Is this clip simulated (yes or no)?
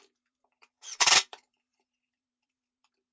yes